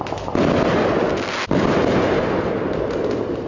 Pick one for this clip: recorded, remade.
recorded